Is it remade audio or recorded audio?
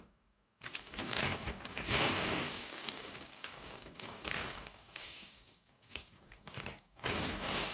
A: remade